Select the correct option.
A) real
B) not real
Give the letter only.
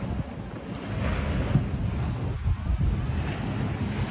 A